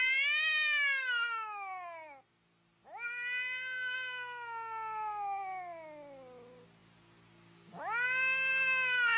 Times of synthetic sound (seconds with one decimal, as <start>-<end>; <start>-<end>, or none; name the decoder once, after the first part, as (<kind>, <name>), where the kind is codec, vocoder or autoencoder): none